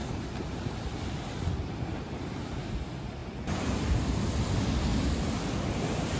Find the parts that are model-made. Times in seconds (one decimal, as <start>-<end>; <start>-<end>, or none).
0.0-1.2